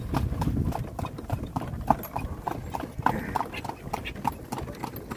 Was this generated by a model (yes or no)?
no